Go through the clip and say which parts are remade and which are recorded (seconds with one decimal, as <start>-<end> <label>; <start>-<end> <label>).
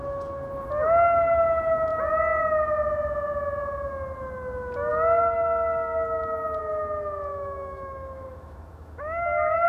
0.0-7.3 recorded; 7.3-9.7 remade